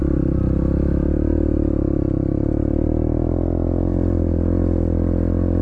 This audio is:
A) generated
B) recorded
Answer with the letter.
B